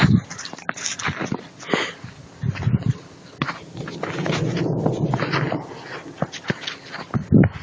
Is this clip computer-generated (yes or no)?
no